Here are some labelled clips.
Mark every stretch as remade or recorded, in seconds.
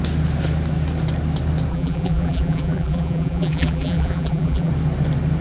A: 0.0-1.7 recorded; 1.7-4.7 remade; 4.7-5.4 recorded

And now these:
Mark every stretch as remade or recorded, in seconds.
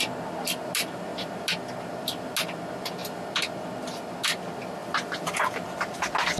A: 0.0-6.4 recorded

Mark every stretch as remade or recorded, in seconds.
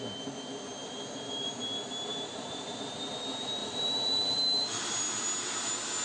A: 0.0-0.8 recorded; 0.8-1.6 remade; 1.6-2.1 recorded; 2.1-2.8 remade; 2.8-3.6 recorded; 3.6-4.9 remade; 4.9-6.0 recorded